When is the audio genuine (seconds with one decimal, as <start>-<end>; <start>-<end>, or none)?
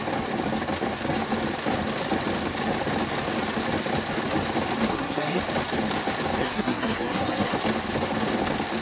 0.0-4.9; 5.4-6.4; 7.5-8.8